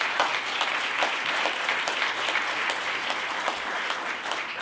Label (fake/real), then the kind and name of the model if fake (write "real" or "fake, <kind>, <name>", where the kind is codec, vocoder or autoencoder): real